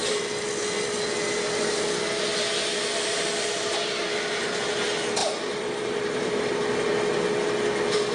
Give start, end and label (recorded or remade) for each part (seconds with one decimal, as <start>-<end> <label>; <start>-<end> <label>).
0.0-5.2 recorded; 5.2-6.6 remade; 6.6-8.1 recorded